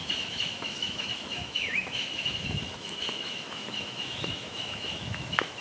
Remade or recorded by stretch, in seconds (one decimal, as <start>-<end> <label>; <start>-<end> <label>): 0.0-5.6 remade